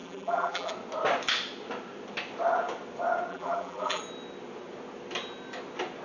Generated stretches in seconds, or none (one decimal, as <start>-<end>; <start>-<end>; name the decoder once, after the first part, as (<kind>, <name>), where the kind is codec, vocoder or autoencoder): 0.0-0.7 (vocoder, BigVGAN v2); 3.3-4.0